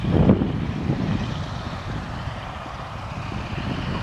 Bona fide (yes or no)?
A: yes